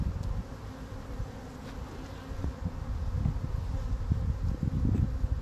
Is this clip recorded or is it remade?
recorded